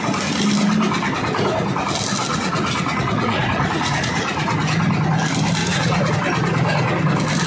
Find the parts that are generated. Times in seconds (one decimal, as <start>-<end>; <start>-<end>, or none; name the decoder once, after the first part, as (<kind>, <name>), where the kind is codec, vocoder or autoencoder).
2.3-4.5 (vocoder, Vocos); 5.6-6.1